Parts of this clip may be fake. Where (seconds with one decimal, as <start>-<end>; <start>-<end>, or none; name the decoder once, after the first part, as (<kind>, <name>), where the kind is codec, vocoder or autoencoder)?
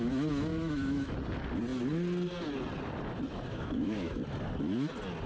0.5-1.1 (autoencoder, DAC-VAE); 3.5-4.2